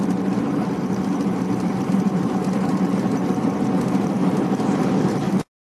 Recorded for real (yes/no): yes